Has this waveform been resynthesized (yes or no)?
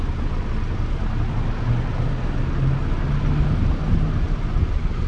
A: no